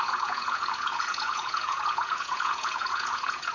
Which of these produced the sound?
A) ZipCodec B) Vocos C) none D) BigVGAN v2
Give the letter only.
B